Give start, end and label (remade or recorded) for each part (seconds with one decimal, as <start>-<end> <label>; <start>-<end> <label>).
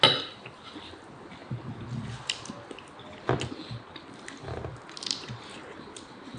0.0-6.4 recorded